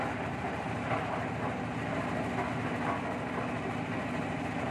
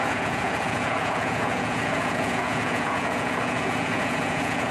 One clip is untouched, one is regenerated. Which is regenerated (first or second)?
second